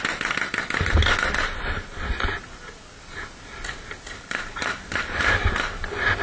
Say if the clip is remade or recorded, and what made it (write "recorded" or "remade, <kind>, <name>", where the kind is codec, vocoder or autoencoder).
recorded